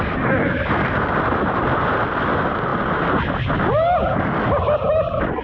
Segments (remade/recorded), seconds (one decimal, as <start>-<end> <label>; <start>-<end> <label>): 0.0-5.4 recorded